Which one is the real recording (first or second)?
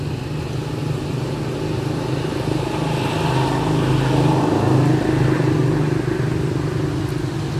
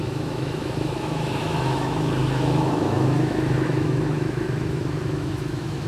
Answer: first